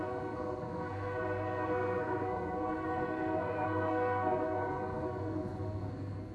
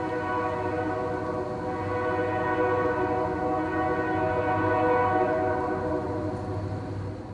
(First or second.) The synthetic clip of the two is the first